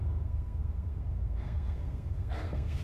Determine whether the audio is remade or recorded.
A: remade